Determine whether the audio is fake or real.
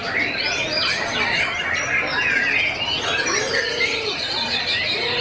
real